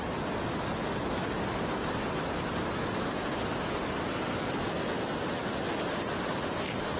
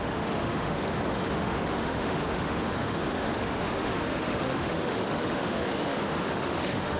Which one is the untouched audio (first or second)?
first